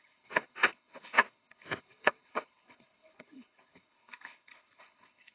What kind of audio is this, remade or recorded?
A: remade